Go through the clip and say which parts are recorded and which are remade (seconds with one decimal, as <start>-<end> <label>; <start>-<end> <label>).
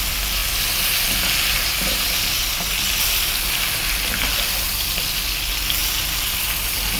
0.0-7.0 recorded